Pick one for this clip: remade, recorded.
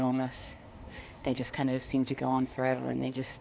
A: remade